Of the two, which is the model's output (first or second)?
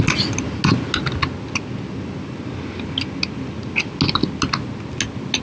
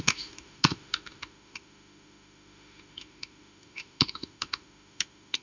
second